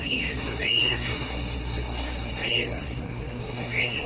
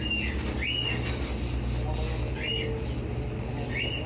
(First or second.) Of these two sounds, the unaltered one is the second